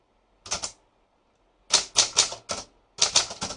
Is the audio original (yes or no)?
yes